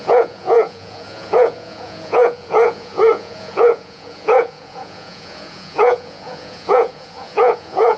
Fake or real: fake